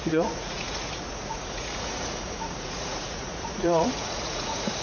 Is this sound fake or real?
fake